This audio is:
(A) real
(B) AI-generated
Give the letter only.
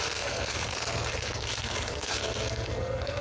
B